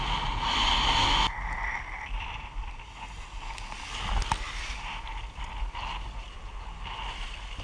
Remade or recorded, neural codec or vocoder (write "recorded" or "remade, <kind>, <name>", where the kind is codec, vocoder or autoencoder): recorded